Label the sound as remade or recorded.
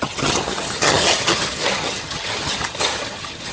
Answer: remade